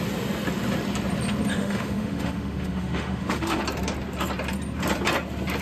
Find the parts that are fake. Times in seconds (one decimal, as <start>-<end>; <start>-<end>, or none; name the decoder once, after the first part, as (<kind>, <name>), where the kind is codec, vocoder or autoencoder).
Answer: 1.5-3.6 (autoencoder, DAC-VAE)

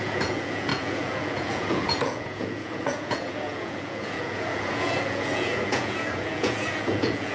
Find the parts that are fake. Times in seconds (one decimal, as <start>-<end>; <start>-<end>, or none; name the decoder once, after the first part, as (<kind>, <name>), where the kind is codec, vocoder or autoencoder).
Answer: 0.0-7.3 (vocoder, Vocos)